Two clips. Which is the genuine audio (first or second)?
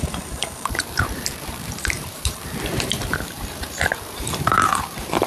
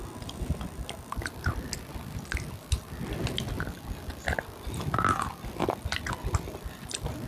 second